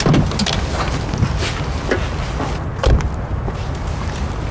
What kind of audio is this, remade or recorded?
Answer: recorded